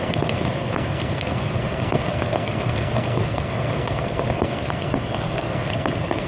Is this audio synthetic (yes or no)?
yes